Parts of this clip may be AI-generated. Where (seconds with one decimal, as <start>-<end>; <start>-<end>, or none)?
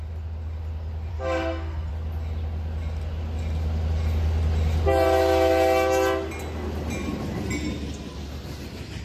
1.1-1.9